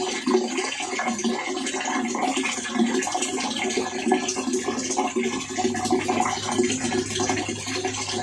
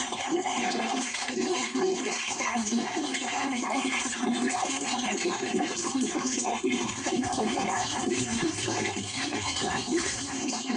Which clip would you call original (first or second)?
first